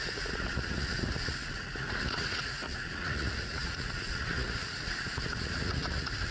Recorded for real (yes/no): no